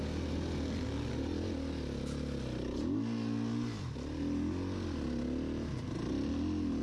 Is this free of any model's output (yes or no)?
yes